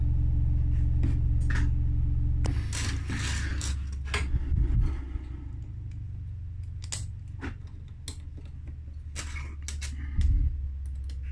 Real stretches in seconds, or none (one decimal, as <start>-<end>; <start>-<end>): 0.0-11.3